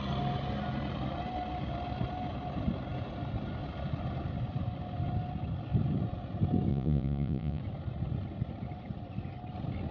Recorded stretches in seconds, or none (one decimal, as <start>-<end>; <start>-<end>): 0.0-6.7; 7.6-9.9